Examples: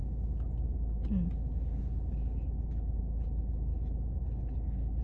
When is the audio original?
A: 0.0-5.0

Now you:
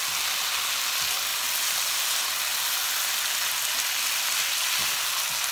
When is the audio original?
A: 0.0-5.5

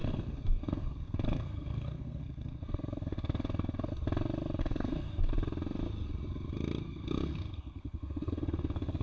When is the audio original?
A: 3.9-4.6; 5.3-6.8

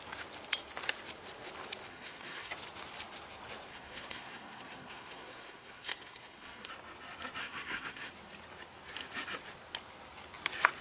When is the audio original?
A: 0.0-1.9; 2.5-3.7; 6.7-7.4; 8.1-10.8